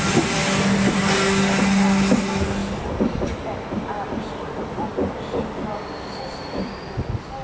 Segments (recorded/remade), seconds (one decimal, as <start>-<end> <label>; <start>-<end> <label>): 0.0-7.4 recorded